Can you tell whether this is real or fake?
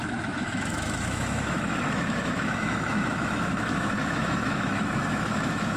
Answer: fake